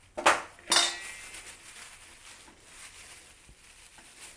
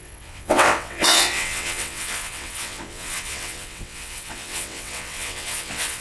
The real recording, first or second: first